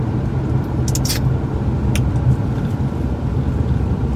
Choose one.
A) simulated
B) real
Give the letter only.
B